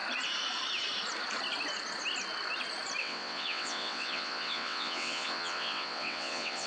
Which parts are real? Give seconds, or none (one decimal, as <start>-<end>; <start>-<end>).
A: 0.0-3.0